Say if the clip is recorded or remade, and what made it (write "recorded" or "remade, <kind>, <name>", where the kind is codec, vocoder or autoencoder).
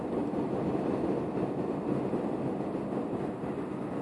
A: recorded